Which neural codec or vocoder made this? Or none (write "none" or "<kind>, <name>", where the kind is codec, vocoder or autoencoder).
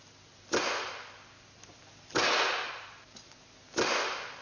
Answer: none